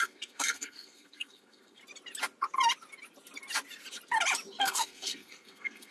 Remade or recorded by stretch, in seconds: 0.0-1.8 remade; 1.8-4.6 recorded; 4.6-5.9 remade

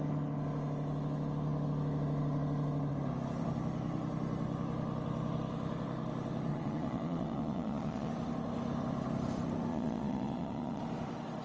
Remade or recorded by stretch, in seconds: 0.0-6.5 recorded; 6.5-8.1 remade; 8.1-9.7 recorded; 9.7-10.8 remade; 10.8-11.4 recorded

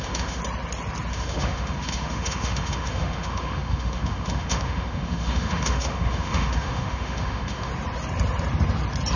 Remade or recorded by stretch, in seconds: 0.0-0.4 remade; 0.4-1.1 recorded; 1.1-7.7 remade; 7.7-9.2 recorded

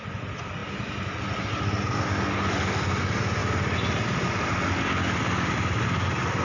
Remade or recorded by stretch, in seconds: 0.0-6.4 recorded

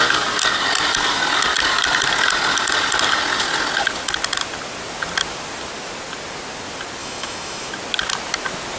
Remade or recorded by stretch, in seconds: 0.0-7.0 recorded; 7.0-7.7 remade; 7.7-8.8 recorded

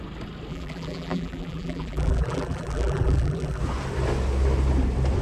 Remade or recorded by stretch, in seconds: 0.0-0.5 recorded; 0.5-3.6 remade; 3.6-5.2 recorded